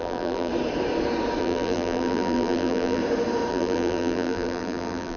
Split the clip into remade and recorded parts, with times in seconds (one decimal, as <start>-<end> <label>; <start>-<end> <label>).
0.0-0.5 remade; 0.5-1.4 recorded; 1.4-3.0 remade; 3.0-3.5 recorded; 3.5-5.2 remade